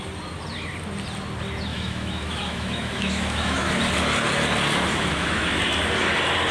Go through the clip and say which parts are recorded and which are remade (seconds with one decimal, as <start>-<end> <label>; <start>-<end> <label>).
0.0-1.7 recorded; 1.7-3.7 remade; 3.7-4.9 recorded; 4.9-5.6 remade; 5.6-6.5 recorded